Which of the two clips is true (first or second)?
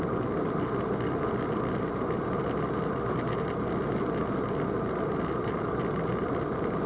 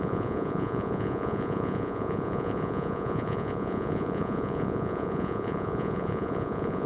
first